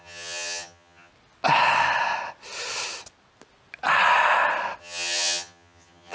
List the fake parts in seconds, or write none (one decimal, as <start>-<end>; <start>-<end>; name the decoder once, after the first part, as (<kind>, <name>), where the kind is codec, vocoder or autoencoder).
0.0-1.1 (vocoder, HiFi-GAN); 4.8-6.1